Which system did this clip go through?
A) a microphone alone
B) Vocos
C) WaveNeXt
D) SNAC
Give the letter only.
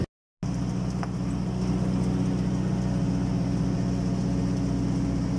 A